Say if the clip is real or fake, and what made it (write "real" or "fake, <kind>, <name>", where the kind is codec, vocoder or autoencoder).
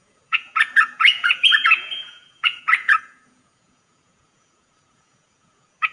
fake, vocoder, Vocos